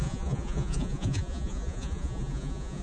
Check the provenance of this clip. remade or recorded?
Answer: remade